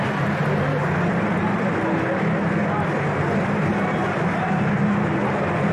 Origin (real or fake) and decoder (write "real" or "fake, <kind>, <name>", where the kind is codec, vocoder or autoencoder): real